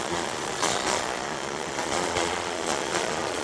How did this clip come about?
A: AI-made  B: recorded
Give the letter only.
A